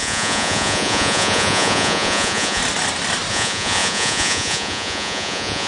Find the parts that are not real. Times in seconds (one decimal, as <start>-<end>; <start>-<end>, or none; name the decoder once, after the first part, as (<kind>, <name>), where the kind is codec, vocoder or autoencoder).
0.0-2.6 (vocoder, Vocos); 3.3-5.7